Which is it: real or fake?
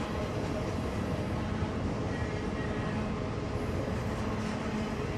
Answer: real